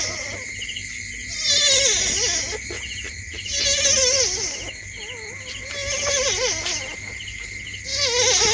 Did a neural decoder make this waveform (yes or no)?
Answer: no